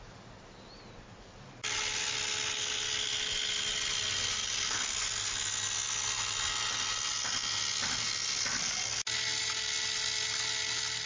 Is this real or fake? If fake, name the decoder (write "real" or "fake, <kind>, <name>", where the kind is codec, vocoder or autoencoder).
real